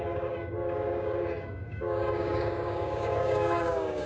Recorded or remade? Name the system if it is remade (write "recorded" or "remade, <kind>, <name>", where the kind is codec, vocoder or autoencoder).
remade, codec, DAC